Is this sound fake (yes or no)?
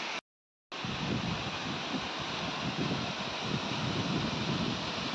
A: no